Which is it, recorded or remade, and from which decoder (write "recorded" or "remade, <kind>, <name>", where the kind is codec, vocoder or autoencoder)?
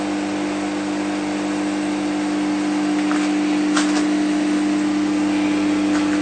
recorded